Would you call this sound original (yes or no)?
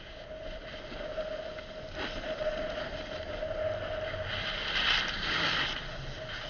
yes